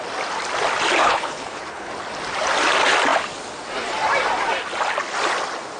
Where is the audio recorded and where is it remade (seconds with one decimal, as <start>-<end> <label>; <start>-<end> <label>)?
0.0-1.0 recorded; 1.0-1.9 remade; 1.9-5.8 recorded